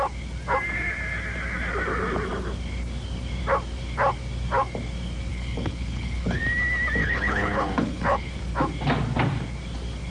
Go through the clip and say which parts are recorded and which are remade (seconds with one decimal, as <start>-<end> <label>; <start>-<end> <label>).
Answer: 0.0-5.3 recorded; 5.3-6.4 remade; 6.4-7.0 recorded; 7.0-8.3 remade; 8.3-10.1 recorded